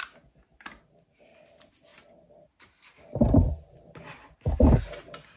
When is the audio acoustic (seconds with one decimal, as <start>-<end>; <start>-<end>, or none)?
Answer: 0.0-5.4